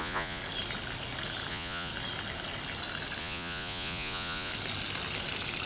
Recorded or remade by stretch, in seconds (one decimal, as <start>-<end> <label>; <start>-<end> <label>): 0.0-0.4 remade; 0.4-1.5 recorded; 1.5-1.9 remade; 1.9-3.2 recorded; 3.2-4.5 remade; 4.5-5.7 recorded